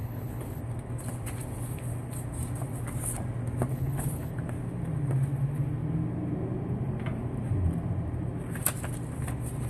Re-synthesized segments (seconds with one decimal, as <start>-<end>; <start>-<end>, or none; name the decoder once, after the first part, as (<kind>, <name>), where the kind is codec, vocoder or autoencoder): 0.0-0.6 (codec, HILCodec); 3.7-4.3